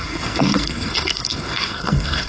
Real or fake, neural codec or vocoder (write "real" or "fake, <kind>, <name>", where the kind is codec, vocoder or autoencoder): fake, codec, SNAC